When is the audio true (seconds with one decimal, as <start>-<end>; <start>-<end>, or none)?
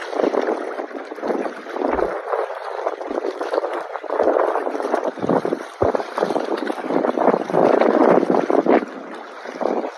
0.0-10.0